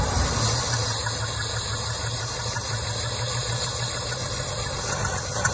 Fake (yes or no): no